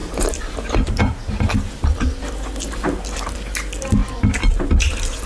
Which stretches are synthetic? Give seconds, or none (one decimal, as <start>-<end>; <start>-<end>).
none